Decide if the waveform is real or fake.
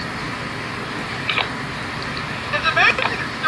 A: real